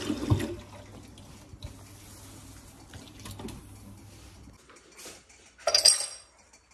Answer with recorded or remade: recorded